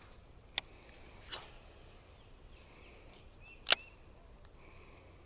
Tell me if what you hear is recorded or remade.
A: recorded